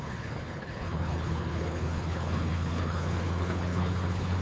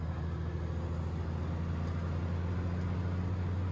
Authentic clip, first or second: second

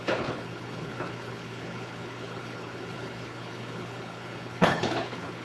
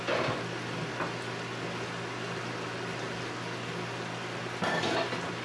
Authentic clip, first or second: second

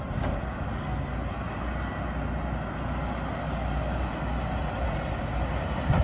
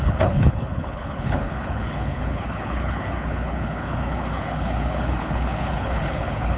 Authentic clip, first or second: first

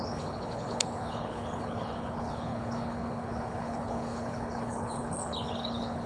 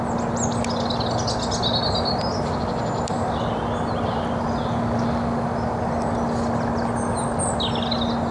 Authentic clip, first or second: second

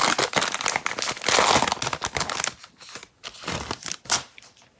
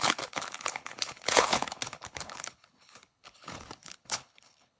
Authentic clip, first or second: first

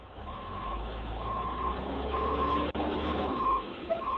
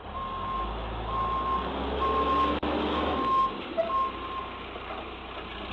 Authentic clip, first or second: second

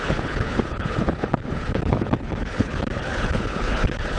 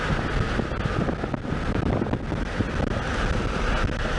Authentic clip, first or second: second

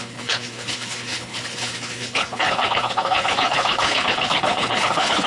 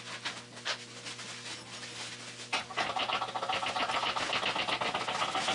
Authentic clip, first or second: second